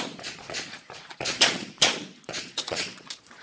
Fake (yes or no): yes